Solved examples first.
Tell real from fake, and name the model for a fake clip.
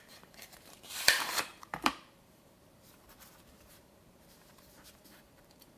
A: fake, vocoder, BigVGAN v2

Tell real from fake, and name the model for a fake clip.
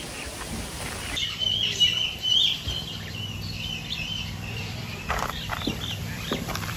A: fake, vocoder, BigVGAN v2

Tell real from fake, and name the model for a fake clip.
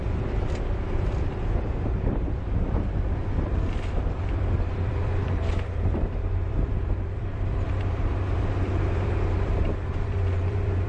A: fake, vocoder, BigVGAN v2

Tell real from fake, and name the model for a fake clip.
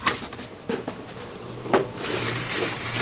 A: fake, vocoder, BigVGAN v2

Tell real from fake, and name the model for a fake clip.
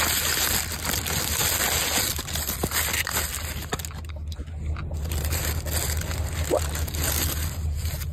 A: real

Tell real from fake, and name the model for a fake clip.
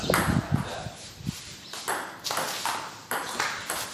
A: real